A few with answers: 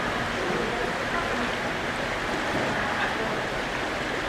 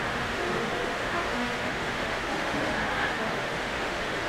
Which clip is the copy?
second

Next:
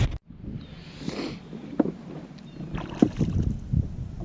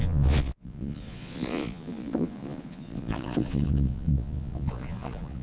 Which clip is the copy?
second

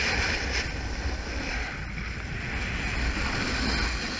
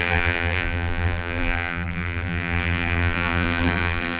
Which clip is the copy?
second